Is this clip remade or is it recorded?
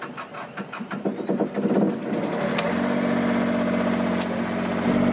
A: recorded